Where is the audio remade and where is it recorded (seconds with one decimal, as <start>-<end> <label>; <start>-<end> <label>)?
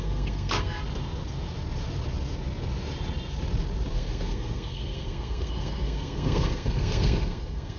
0.0-0.8 remade; 0.8-3.9 recorded; 3.9-7.8 remade